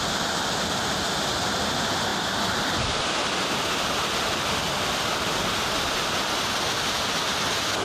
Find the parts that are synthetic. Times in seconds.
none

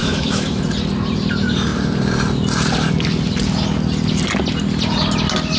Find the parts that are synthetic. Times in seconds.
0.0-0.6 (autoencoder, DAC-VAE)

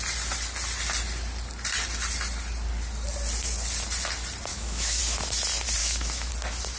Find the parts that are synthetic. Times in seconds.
4.5-5.0 (autoencoder, DAC-VAE); 5.8-6.3

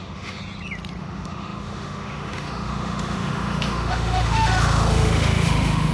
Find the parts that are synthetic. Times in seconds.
0.0-0.4 (autoencoder, DAC-VAE); 1.0-5.9

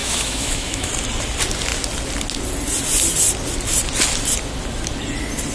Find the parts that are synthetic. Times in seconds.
0.0-0.9 (autoencoder, DAC-VAE)